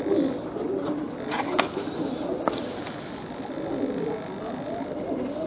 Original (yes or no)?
yes